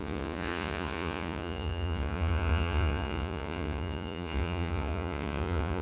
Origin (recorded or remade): remade